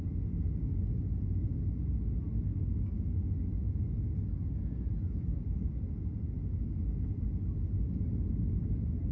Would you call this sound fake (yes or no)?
no